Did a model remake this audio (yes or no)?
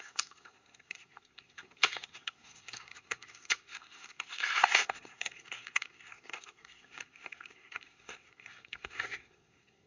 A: yes